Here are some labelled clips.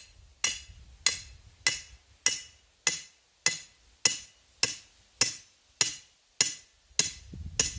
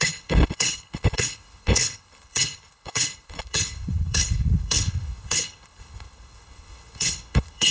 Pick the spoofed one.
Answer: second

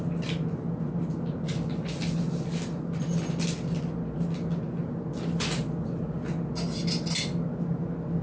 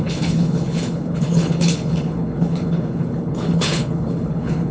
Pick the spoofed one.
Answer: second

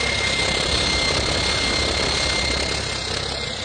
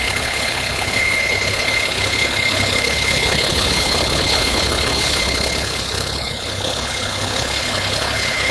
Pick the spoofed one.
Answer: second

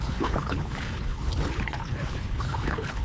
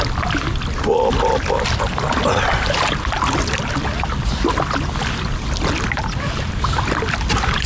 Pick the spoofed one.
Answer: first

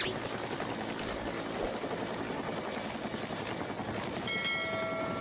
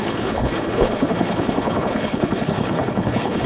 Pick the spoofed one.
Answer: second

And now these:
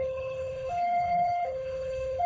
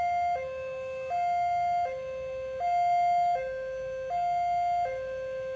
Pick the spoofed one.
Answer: first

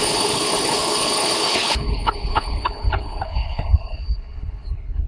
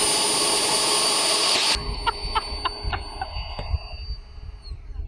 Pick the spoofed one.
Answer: first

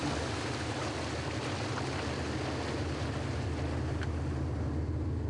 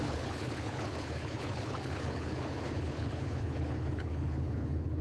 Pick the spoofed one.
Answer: second